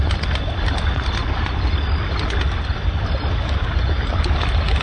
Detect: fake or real real